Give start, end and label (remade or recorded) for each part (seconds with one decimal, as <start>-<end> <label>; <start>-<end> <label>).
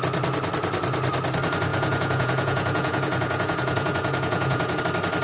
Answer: 0.0-1.7 recorded; 1.7-4.8 remade; 4.8-5.2 recorded